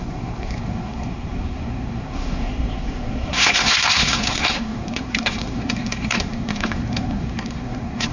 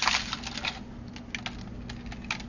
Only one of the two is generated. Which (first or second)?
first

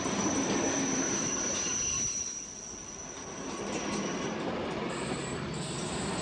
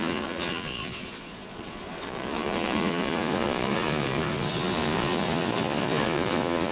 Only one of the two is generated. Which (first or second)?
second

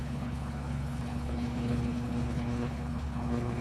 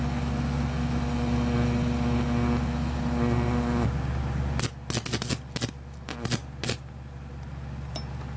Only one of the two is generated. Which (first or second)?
first